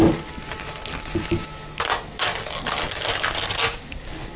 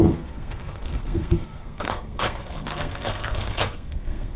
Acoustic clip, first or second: first